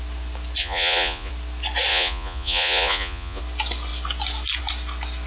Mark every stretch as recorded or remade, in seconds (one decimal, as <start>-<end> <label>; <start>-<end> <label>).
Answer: 0.0-0.6 recorded; 0.6-1.3 remade; 1.3-1.9 recorded; 1.9-3.4 remade; 3.4-5.3 recorded